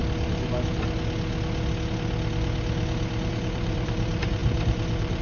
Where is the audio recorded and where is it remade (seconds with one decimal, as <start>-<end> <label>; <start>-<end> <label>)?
0.0-3.1 recorded; 3.1-5.2 remade